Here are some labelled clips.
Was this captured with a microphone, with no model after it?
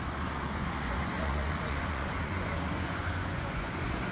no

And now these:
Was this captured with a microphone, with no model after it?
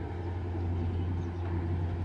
yes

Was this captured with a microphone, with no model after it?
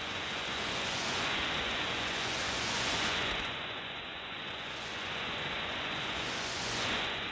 no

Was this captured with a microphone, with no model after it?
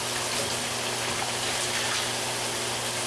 yes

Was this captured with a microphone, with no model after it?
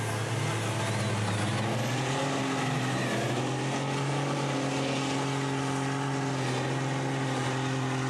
yes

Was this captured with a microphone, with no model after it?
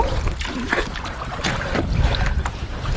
yes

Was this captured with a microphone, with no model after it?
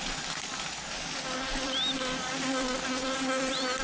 yes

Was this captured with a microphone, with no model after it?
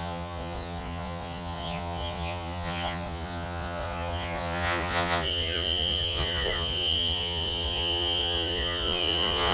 no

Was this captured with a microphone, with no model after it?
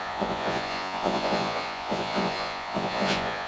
no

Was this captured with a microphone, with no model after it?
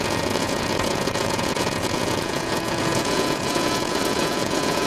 no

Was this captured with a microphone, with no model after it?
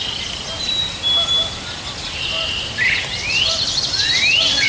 yes